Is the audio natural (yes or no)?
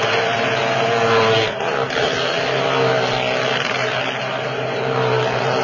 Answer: yes